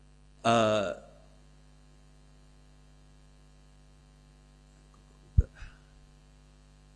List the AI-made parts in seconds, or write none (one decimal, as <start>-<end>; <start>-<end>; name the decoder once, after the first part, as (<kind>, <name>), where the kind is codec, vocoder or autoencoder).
none